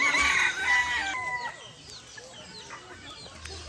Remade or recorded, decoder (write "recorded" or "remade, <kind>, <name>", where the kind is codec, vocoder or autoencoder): recorded